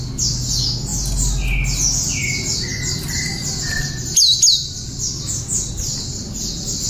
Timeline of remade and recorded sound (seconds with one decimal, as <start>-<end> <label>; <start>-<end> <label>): 0.0-6.9 recorded